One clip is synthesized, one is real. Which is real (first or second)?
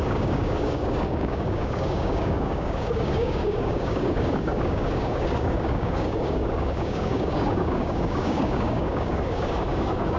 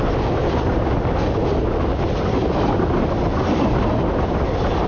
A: second